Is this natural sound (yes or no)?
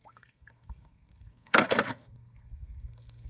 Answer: no